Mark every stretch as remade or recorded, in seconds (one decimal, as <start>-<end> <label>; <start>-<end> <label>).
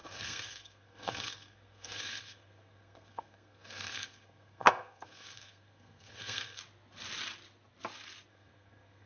0.0-6.6 remade; 6.6-8.3 recorded; 8.3-9.1 remade